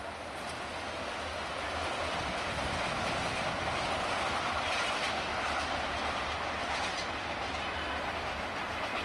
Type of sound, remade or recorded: recorded